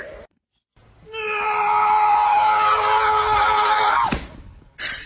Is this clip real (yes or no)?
yes